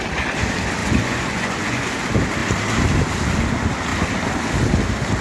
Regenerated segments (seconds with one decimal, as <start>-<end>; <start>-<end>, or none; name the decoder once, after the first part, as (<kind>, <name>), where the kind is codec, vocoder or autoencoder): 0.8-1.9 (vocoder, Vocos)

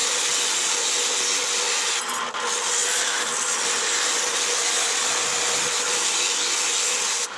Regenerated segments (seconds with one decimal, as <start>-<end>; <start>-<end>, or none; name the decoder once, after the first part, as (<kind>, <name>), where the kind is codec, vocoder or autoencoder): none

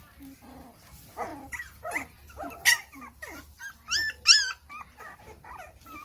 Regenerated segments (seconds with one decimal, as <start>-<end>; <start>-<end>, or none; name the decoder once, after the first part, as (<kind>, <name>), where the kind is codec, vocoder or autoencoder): none

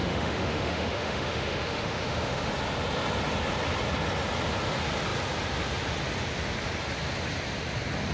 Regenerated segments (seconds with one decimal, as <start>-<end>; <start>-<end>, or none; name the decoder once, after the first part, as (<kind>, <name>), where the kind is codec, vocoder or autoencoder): 0.0-2.5 (autoencoder, DAC-VAE)

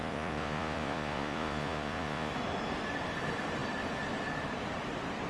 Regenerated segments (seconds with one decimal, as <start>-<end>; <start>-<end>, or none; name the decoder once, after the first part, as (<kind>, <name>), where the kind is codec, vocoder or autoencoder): 0.0-2.3 (vocoder, Vocos)

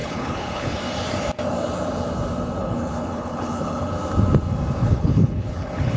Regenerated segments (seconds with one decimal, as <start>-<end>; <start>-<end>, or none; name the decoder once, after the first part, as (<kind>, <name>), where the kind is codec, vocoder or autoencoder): 0.0-0.8 (codec, HILCodec); 2.6-3.9; 4.8-6.0

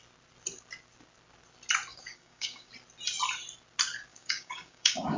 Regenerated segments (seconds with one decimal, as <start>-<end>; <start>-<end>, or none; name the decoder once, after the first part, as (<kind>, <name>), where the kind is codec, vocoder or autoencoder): 1.9-2.7 (codec, DAC); 4.1-5.2

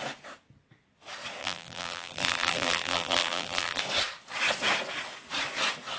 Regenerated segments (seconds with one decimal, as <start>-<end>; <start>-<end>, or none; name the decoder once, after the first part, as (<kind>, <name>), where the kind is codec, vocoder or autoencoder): 1.4-3.8 (vocoder, BigVGAN v2)